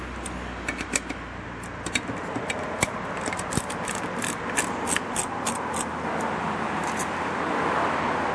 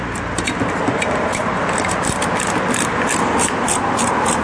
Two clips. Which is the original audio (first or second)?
first